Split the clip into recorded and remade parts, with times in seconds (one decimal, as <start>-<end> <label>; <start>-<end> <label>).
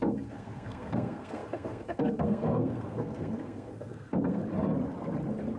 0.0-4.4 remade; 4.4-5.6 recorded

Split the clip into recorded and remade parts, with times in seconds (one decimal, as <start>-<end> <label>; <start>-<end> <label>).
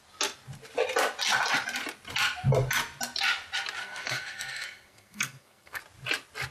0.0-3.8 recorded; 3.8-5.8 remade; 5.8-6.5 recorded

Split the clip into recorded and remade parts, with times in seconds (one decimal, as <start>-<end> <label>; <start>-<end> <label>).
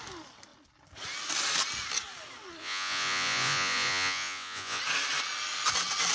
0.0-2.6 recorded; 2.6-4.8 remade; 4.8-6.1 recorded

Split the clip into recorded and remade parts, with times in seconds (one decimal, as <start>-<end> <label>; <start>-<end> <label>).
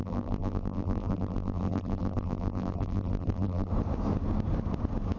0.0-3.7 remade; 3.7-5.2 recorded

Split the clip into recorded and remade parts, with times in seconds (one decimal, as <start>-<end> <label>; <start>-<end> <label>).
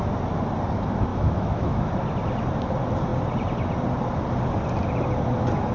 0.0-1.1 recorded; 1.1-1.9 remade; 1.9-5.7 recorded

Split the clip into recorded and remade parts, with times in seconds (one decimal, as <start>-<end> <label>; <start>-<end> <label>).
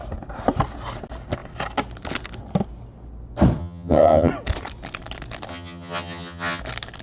0.0-3.6 recorded; 3.6-4.3 remade; 4.3-5.5 recorded; 5.5-6.6 remade; 6.6-7.0 recorded